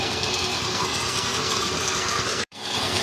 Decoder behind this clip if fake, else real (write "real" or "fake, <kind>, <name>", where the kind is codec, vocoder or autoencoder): fake, codec, SNAC